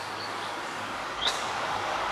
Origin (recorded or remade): remade